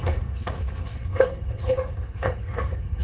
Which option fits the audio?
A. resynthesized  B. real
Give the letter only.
A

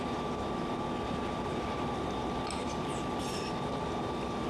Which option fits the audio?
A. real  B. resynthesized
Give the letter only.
A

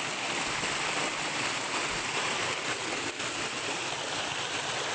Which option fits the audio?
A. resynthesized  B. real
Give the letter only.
B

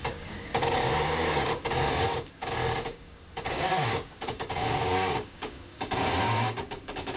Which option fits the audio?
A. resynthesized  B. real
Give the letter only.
A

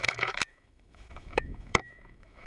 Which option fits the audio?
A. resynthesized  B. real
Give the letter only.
A